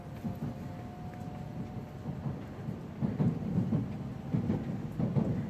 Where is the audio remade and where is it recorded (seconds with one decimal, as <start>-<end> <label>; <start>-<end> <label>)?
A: 0.0-1.5 recorded; 1.5-4.8 remade; 4.8-5.5 recorded